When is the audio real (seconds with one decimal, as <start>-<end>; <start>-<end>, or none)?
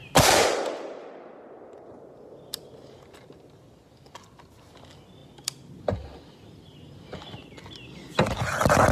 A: 0.0-8.9